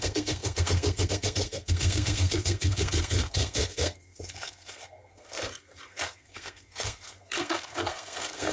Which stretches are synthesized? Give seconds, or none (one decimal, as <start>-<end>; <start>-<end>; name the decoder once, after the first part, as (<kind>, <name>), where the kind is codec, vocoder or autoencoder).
0.0-8.5 (codec, SNAC)